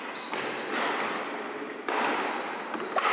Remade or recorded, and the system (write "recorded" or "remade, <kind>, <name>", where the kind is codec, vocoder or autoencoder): recorded